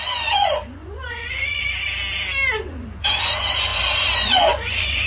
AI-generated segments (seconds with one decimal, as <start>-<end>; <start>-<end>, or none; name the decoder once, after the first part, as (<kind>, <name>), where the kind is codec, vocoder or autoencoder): 0.0-1.6 (vocoder, Vocos); 2.6-5.1